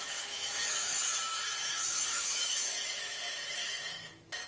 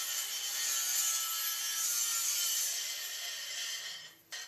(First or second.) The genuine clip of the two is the second